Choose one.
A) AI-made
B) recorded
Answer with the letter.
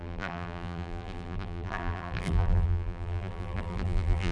A